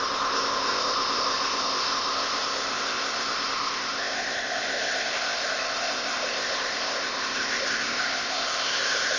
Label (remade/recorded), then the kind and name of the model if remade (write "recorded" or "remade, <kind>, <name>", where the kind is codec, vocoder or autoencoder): remade, codec, ZipCodec